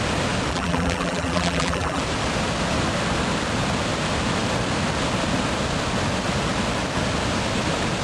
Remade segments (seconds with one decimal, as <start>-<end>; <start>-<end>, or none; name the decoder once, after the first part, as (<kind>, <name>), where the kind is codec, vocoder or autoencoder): 0.5-2.0 (vocoder, BigVGAN v2)

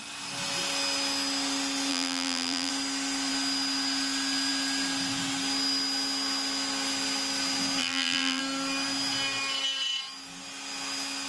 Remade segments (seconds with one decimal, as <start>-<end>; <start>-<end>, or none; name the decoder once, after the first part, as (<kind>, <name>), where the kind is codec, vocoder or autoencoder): 1.9-2.7 (vocoder, BigVGAN v2); 7.8-8.4

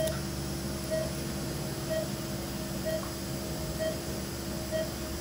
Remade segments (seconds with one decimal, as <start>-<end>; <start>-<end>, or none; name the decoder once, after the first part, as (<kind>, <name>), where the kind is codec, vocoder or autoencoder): none

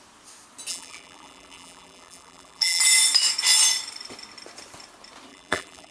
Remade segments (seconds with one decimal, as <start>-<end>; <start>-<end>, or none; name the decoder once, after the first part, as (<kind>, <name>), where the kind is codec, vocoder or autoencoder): 0.7-2.8 (vocoder, BigVGAN v2); 5.3-5.9